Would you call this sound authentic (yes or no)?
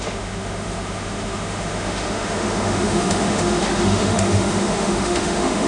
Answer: no